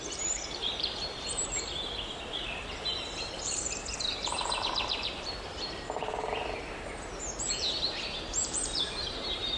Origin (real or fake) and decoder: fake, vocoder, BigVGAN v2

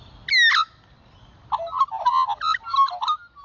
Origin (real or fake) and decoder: real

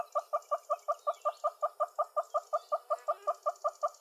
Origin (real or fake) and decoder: real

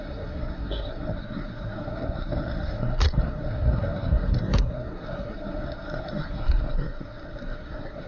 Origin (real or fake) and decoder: fake, codec, SNAC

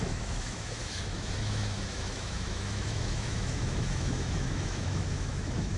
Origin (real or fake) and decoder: fake, autoencoder, DAC-VAE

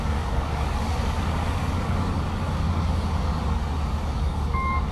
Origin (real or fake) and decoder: fake, codec, DAC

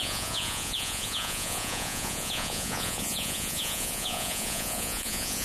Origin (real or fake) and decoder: fake, vocoder, Vocos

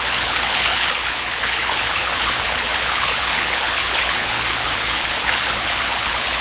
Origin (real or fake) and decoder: fake, codec, HILCodec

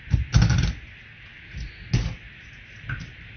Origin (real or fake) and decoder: real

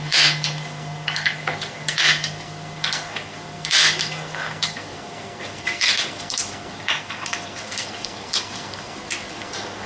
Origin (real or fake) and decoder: fake, codec, SNAC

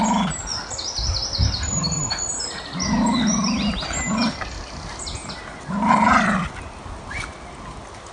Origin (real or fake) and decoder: real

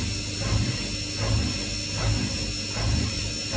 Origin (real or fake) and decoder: real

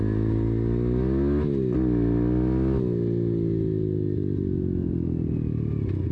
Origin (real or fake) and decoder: real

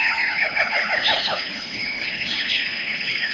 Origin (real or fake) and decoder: fake, codec, HILCodec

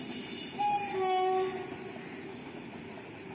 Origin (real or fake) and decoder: real